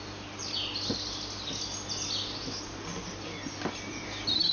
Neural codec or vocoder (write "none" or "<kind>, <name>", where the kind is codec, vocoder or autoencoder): none